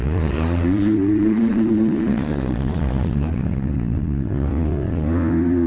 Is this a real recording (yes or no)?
no